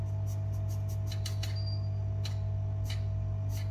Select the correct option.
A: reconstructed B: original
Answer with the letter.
B